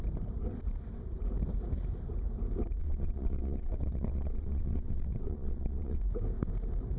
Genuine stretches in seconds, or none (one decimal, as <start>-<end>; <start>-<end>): 0.0-2.8; 6.0-7.0